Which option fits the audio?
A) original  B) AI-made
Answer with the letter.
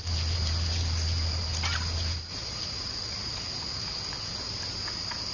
A